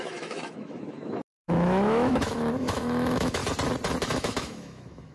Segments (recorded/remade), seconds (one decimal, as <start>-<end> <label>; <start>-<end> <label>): 0.0-3.4 remade; 3.4-4.0 recorded; 4.0-5.1 remade